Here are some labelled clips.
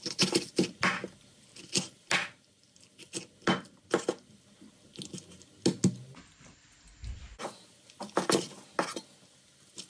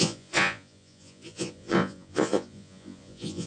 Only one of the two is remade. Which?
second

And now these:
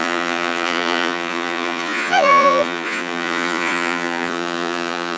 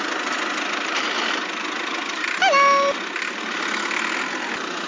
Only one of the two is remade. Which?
first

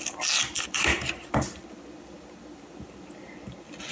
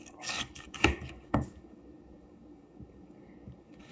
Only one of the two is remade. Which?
second